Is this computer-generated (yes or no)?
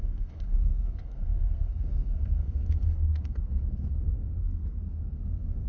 yes